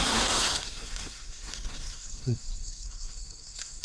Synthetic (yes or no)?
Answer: yes